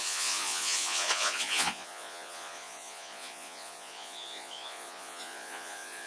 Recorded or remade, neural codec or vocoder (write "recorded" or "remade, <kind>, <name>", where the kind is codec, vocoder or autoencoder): remade, vocoder, Vocos